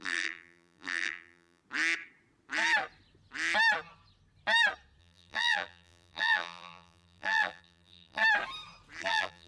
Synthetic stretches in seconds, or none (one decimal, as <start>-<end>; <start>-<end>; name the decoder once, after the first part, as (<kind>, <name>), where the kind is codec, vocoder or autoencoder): 0.0-1.6 (vocoder, BigVGAN v2); 5.0-8.2; 9.0-9.5